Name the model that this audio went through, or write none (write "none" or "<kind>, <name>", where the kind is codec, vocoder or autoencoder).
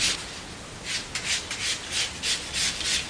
none